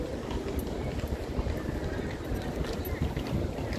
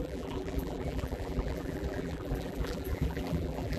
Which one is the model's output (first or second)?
second